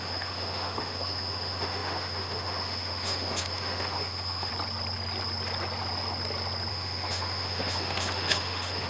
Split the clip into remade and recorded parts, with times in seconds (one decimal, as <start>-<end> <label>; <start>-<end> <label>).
0.0-4.5 remade; 4.5-6.7 recorded; 6.7-8.9 remade